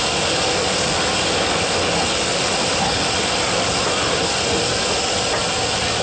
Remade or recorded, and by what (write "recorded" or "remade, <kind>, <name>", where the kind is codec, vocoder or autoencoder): recorded